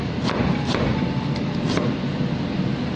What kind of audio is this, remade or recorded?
recorded